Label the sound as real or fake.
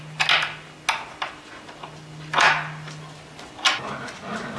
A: real